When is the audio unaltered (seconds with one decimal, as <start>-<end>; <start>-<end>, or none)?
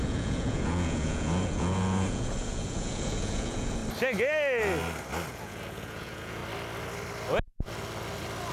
3.8-5.3; 6.4-8.5